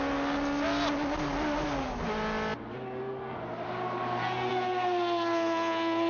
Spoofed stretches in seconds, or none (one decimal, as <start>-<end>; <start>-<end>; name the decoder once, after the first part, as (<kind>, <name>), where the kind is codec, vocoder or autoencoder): none